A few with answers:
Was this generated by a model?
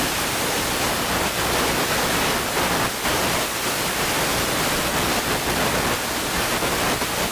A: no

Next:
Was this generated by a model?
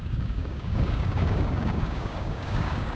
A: yes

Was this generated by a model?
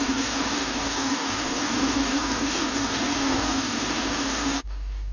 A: yes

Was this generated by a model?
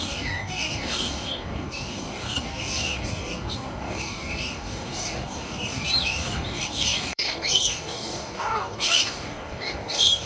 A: yes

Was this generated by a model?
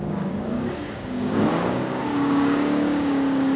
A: yes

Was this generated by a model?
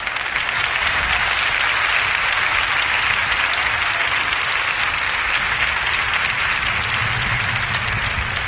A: no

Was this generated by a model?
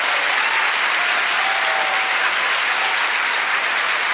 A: no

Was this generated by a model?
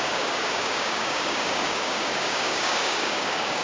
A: yes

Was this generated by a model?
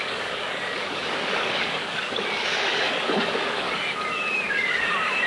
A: yes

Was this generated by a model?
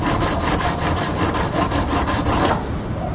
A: no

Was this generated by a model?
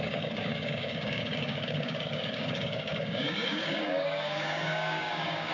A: yes